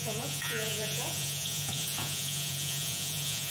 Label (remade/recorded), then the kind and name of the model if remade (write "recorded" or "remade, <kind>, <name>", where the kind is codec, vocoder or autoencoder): remade, vocoder, Vocos